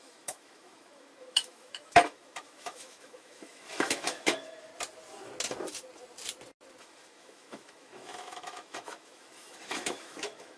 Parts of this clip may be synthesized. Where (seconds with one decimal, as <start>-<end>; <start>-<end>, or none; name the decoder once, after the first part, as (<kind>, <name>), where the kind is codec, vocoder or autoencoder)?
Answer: 0.0-4.7 (autoencoder, DAC-VAE); 6.8-10.6